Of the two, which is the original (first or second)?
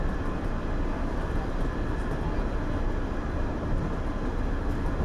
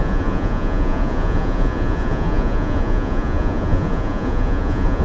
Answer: first